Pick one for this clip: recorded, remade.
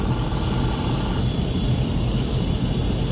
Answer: recorded